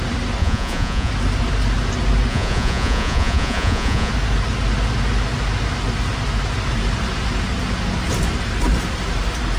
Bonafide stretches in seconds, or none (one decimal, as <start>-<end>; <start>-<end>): 0.0-0.4; 1.1-2.3; 4.1-9.6